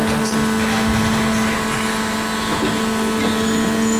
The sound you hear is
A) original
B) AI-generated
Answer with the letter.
A